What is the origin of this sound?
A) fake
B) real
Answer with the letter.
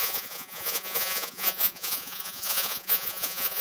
A